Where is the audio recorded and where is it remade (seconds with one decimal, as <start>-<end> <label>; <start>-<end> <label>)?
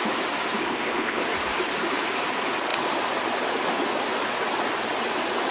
0.0-0.6 recorded; 0.6-1.2 remade; 1.2-5.5 recorded